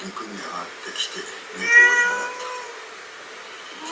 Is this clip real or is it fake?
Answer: real